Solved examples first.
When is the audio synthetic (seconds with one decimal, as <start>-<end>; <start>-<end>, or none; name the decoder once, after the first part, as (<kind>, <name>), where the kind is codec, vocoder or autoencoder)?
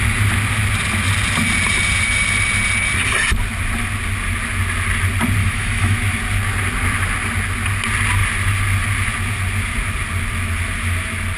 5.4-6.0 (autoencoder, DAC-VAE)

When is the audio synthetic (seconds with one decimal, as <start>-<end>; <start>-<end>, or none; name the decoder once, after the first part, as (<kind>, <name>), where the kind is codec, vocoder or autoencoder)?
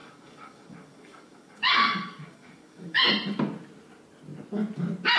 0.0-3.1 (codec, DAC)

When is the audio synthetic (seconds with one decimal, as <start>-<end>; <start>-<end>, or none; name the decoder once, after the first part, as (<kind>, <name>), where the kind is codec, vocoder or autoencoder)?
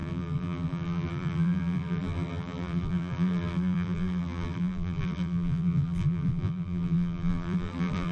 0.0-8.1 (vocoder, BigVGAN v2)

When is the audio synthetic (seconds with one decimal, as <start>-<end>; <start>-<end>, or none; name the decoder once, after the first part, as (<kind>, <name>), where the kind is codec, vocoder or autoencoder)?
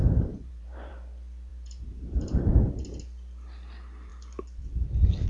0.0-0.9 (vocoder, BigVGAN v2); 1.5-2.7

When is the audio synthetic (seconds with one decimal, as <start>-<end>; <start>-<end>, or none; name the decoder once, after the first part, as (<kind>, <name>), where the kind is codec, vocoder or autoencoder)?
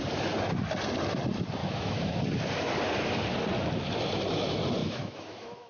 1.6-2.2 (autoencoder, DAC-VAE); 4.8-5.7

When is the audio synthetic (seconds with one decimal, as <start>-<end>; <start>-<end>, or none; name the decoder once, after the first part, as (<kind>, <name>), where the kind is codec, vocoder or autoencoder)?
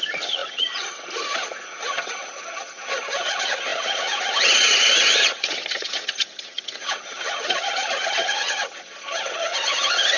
0.0-10.2 (vocoder, HiFi-GAN)